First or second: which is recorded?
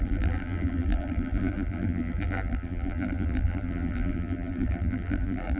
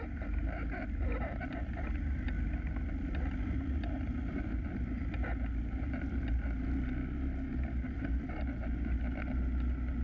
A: second